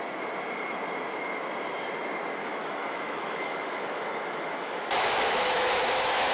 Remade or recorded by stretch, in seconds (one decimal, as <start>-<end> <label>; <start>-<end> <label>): 0.0-2.4 recorded; 2.4-6.3 remade